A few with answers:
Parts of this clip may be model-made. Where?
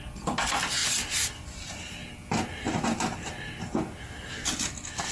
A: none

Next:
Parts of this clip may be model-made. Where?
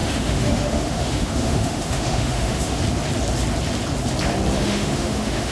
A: 0.0-2.8 (autoencoder, DAC-VAE); 4.6-5.5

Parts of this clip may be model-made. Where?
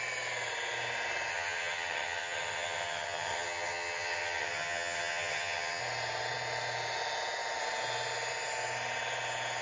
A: 1.3-5.8 (vocoder, HiFi-GAN)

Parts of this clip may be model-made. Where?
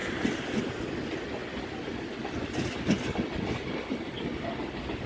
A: none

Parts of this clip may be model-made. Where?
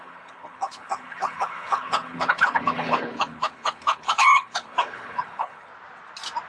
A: 0.0-5.7 (codec, HILCodec)